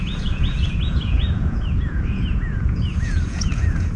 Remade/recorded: remade